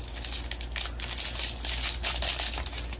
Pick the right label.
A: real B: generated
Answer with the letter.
A